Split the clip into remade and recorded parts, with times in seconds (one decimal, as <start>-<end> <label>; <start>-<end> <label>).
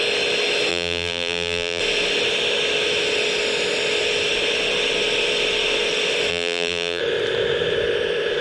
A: 0.0-0.7 recorded; 0.7-1.8 remade; 1.8-6.3 recorded; 6.3-7.0 remade; 7.0-8.4 recorded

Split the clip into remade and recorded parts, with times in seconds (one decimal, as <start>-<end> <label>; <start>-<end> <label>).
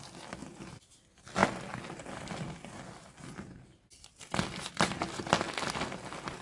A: 0.0-6.4 recorded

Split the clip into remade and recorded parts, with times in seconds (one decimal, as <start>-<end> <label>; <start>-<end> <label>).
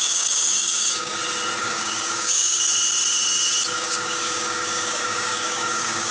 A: 0.0-1.1 remade; 1.1-1.6 recorded; 1.6-2.6 remade; 2.6-3.7 recorded; 3.7-6.1 remade